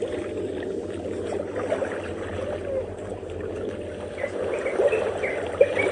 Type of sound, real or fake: real